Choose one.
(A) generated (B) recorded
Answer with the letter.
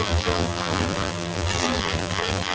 A